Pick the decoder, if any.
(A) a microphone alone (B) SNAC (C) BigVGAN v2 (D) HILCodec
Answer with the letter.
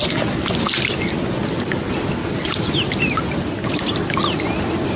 A